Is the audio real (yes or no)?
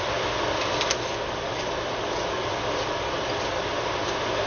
yes